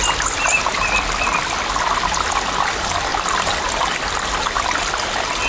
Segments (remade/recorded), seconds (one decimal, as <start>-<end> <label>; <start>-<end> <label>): 0.0-3.1 recorded; 3.1-4.8 remade; 4.8-5.5 recorded